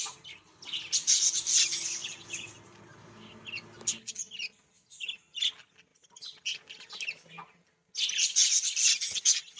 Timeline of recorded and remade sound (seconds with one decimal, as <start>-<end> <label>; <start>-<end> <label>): 0.0-2.0 recorded; 2.0-2.5 remade; 2.5-9.6 recorded